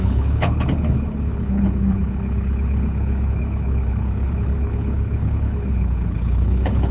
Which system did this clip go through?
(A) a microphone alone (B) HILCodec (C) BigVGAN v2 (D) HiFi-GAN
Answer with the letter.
B